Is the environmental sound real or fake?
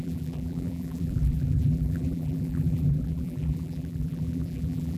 fake